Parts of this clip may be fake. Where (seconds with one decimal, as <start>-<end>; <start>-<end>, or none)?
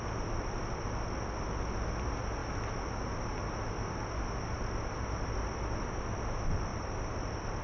6.7-7.6